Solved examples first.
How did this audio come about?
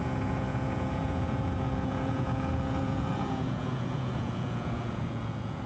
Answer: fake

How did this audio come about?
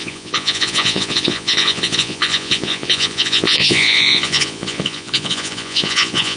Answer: fake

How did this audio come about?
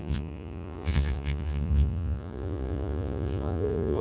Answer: fake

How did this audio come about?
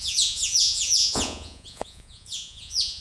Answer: fake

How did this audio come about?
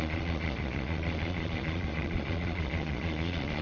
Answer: fake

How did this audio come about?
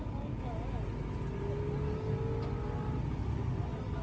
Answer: real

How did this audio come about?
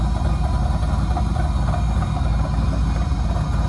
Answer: real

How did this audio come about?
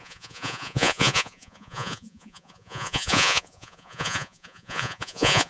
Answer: fake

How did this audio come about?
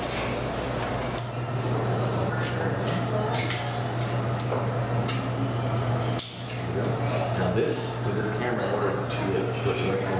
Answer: real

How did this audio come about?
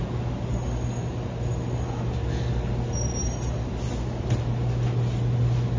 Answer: real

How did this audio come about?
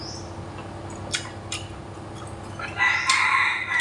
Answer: real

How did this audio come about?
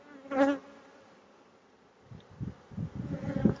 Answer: real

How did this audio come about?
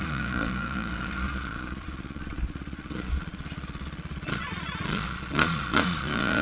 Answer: fake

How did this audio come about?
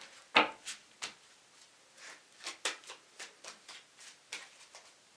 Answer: real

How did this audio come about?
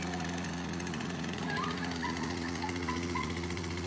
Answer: fake